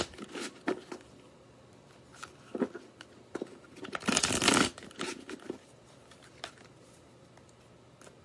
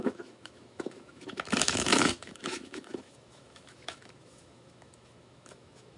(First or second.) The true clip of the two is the first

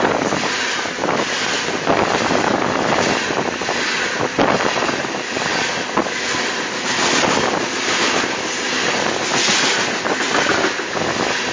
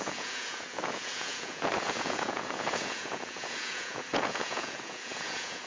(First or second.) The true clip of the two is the first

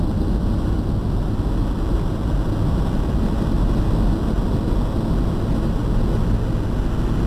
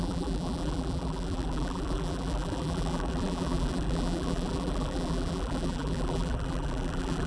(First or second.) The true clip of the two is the first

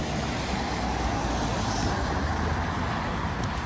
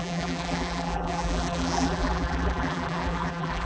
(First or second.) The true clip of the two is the first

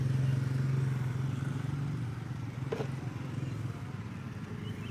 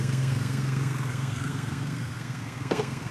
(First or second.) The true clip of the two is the first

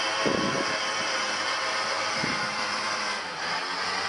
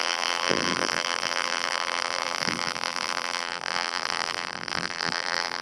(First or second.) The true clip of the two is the first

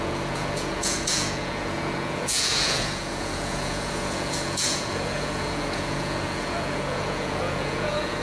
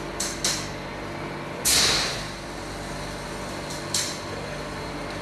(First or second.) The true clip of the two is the second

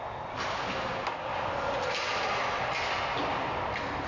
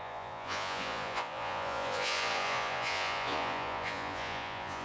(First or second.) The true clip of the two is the first